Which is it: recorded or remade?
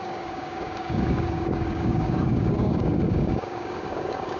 remade